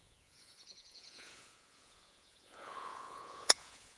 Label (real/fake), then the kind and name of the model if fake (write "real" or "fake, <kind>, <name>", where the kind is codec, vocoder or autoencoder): fake, vocoder, Vocos